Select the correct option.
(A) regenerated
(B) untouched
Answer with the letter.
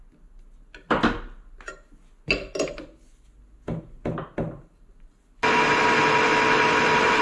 B